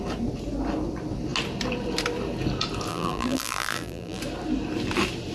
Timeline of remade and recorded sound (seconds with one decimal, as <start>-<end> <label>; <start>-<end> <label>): 0.0-2.9 recorded; 2.9-4.2 remade; 4.2-5.3 recorded